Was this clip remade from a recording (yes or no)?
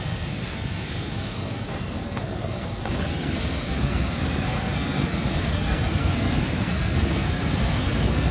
yes